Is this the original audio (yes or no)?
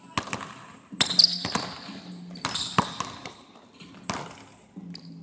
yes